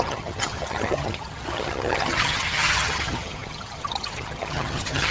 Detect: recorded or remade remade